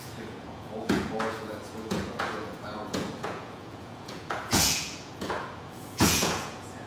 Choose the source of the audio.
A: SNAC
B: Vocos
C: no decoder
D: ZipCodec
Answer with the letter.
B